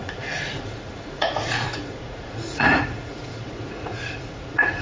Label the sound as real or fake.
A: fake